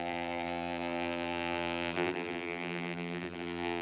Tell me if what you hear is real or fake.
fake